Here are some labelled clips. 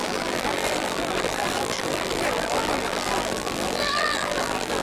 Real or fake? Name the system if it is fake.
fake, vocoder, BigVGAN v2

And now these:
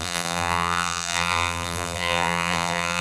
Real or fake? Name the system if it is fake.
fake, vocoder, BigVGAN v2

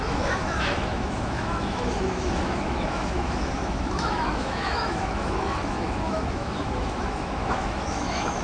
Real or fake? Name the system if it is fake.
fake, autoencoder, DAC-VAE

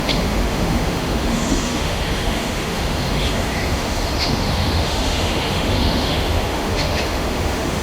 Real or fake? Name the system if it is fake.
fake, autoencoder, DAC-VAE